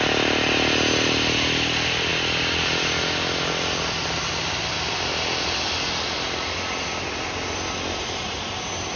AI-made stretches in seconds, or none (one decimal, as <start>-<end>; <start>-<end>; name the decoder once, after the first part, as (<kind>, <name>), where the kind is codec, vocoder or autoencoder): none

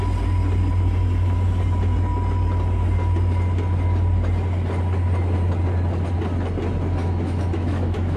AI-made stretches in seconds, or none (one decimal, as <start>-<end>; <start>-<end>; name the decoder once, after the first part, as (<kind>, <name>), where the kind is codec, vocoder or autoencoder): 7.0-8.2 (autoencoder, DAC-VAE)

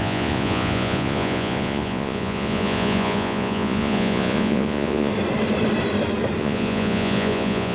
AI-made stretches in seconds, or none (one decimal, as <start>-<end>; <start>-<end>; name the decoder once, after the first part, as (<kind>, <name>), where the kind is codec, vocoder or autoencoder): 0.0-5.1 (vocoder, Vocos); 6.4-7.7

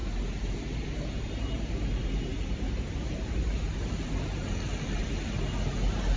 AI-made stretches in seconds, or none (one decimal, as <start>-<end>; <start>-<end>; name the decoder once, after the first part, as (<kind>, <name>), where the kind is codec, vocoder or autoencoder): none

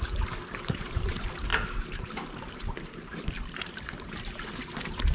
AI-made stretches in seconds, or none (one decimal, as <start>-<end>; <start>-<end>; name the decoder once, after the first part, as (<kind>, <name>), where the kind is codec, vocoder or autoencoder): 0.0-5.1 (vocoder, BigVGAN v2)